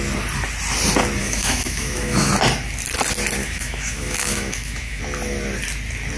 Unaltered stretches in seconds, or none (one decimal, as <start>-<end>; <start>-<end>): 0.0-1.2; 2.3-3.4; 5.0-6.2